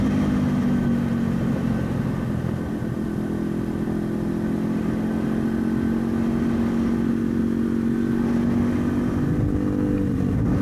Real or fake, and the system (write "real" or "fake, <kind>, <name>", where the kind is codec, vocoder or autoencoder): real